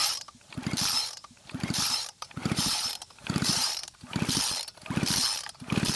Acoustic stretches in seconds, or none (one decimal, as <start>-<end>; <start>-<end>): 0.5-1.0; 4.4-6.0